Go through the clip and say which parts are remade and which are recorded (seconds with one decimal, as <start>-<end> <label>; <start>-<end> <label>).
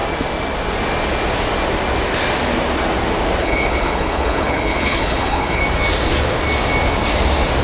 0.0-3.4 recorded; 3.4-5.6 remade; 5.6-7.6 recorded